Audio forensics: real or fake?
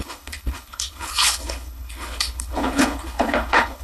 fake